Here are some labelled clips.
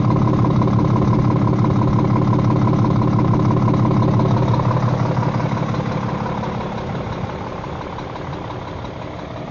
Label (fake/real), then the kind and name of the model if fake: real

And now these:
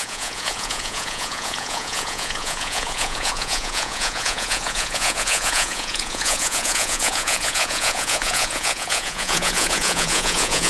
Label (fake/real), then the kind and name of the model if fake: fake, vocoder, Vocos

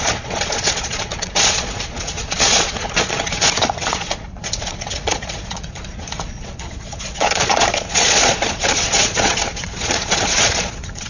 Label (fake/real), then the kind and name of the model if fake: fake, vocoder, Vocos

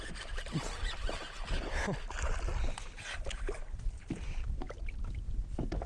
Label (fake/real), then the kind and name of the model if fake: real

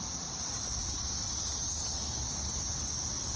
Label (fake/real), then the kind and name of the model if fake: real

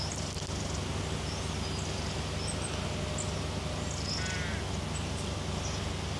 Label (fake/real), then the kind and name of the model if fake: real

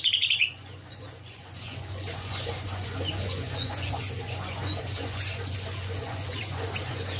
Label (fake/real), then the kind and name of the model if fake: fake, vocoder, Vocos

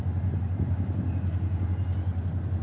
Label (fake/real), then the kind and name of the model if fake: real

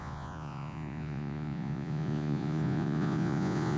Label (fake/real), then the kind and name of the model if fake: fake, vocoder, Vocos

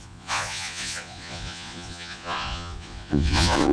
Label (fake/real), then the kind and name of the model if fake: fake, vocoder, Vocos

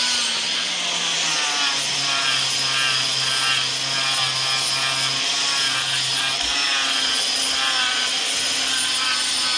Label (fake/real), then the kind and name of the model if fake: real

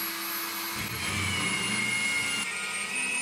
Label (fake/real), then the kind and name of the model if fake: real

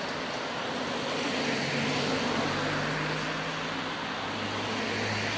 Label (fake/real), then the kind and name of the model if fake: real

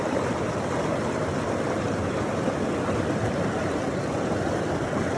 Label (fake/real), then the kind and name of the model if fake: real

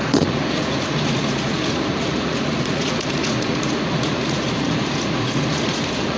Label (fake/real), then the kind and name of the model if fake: fake, vocoder, Vocos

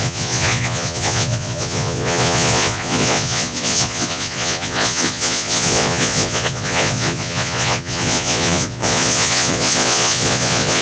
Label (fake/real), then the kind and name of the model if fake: fake, vocoder, Vocos